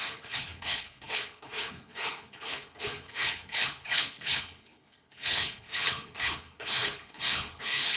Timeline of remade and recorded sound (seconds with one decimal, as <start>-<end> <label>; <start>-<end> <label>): 0.0-8.0 remade